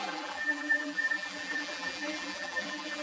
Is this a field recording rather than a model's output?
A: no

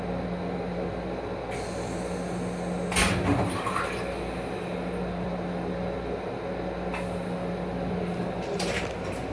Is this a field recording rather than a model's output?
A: yes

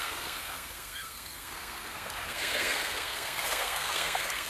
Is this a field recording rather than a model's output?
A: no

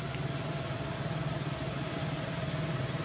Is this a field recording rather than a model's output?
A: no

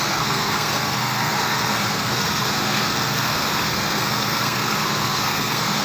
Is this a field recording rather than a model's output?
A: no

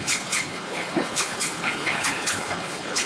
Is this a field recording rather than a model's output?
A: no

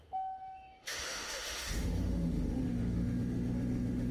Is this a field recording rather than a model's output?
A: no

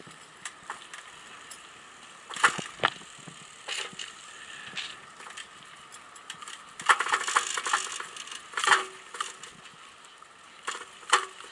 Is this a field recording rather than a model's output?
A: yes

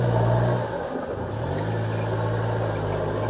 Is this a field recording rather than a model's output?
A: yes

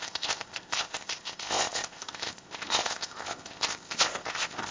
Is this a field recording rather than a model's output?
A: no